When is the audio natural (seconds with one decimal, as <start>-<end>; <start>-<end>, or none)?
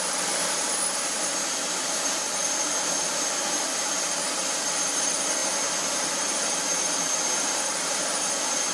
5.4-6.0